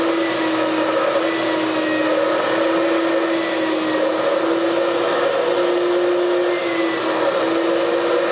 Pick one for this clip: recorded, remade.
recorded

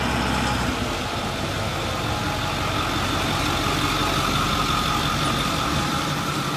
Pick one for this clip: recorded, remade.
recorded